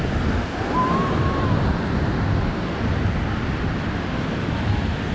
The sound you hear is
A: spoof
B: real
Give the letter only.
B